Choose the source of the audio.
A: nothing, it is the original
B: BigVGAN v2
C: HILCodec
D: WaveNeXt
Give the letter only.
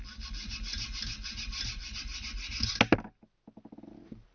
A